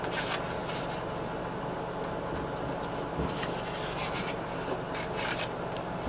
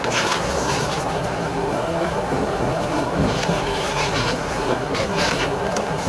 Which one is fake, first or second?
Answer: second